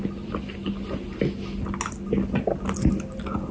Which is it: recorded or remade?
recorded